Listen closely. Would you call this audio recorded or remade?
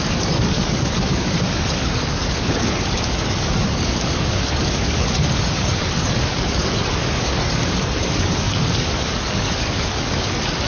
remade